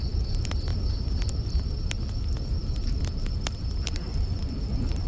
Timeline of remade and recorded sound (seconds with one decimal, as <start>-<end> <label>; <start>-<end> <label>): 0.0-5.1 recorded